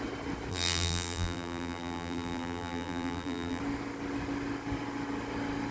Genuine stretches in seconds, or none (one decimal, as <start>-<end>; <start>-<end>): 0.0-0.5; 3.6-5.7